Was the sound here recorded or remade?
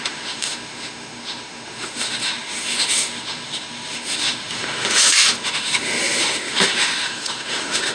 remade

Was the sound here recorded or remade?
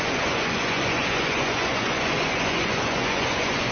remade